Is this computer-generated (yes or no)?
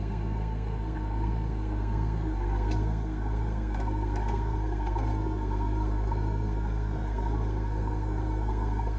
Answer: yes